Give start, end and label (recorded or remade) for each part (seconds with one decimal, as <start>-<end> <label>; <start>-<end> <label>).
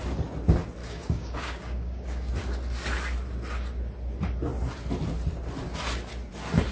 0.0-0.8 recorded; 0.8-2.3 remade; 2.3-6.7 recorded